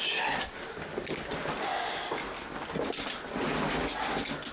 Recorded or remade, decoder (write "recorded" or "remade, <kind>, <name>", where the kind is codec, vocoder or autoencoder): recorded